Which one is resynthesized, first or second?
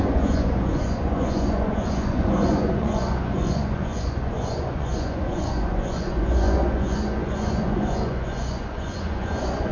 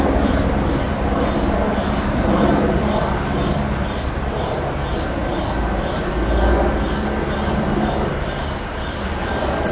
first